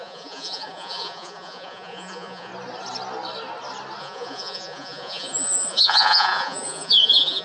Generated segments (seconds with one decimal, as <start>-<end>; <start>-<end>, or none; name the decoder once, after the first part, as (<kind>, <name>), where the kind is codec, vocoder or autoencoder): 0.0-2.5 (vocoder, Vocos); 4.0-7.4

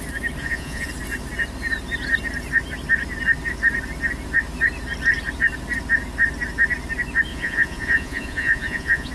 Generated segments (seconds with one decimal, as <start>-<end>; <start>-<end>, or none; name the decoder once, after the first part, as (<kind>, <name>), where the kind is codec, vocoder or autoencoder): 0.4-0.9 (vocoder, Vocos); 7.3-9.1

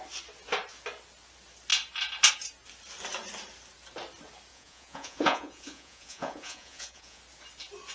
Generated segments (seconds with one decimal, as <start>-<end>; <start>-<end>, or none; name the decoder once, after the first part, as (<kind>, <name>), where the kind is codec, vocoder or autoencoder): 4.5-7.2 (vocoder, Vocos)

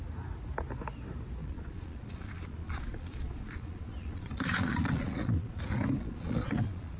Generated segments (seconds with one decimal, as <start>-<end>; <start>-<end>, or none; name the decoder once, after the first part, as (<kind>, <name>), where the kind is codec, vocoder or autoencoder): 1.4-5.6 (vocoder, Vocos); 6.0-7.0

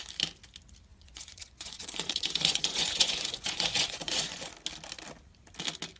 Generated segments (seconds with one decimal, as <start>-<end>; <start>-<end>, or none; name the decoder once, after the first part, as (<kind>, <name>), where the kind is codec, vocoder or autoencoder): 0.9-4.5 (vocoder, Vocos)

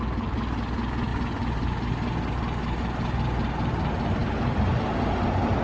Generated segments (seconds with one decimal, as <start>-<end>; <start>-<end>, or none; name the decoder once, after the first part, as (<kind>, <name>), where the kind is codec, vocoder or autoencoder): none